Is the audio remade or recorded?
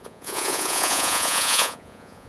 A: remade